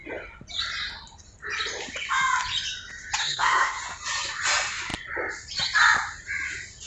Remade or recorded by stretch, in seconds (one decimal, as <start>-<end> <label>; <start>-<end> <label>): 0.0-3.2 recorded; 3.2-3.8 remade; 3.8-6.9 recorded